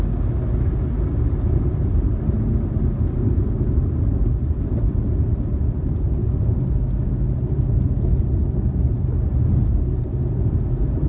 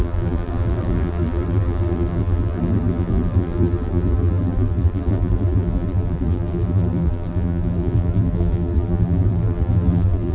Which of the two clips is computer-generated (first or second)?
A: second